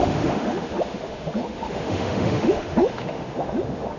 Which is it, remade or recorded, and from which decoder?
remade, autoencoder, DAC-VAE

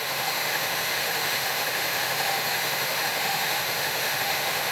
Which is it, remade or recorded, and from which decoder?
remade, autoencoder, DAC-VAE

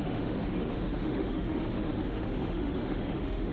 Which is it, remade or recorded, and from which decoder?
remade, autoencoder, DAC-VAE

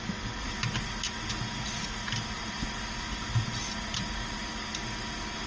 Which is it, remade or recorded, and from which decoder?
recorded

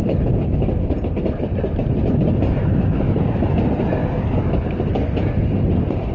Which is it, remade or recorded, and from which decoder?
recorded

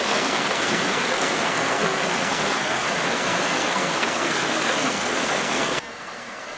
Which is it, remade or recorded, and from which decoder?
remade, codec, SNAC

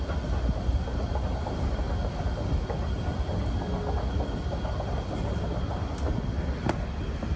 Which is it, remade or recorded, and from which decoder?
recorded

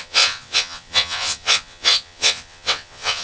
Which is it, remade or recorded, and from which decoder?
remade, vocoder, WaveNeXt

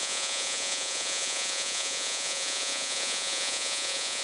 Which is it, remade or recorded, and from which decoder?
remade, vocoder, Vocos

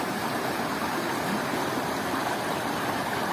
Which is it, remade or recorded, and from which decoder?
recorded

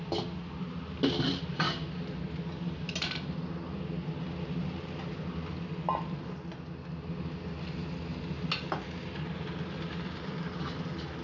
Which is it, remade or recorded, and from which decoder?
recorded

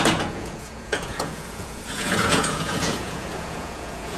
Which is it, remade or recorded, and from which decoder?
remade, vocoder, Vocos